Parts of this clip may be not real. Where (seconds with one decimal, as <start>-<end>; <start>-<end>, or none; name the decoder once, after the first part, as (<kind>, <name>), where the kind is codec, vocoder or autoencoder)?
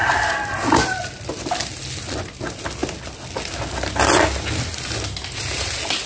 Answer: none